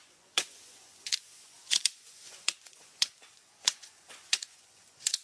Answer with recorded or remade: remade